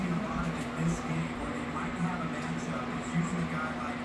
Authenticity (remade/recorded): recorded